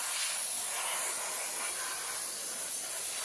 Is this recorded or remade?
recorded